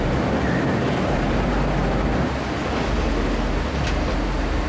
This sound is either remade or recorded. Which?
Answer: recorded